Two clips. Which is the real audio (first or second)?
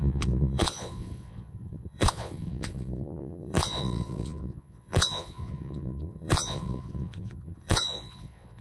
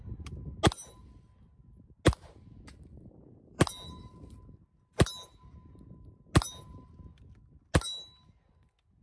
second